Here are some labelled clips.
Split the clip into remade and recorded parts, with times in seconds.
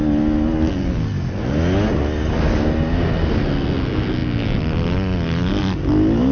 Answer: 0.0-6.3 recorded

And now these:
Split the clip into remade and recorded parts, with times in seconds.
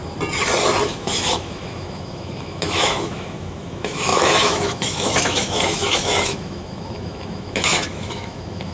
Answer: 0.0-0.9 recorded; 0.9-8.7 remade